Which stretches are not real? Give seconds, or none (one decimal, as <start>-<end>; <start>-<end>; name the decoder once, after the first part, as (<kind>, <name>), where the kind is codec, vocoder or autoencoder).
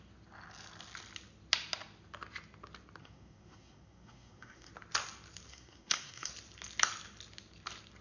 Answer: 3.0-4.7 (codec, SNAC); 5.5-6.3